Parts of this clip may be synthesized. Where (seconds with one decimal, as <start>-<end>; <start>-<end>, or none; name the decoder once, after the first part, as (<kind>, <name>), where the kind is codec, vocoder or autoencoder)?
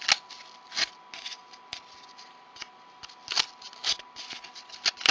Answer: none